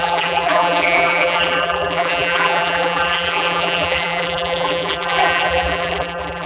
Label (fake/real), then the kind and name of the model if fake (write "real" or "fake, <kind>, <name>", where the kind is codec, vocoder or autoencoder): fake, vocoder, BigVGAN v2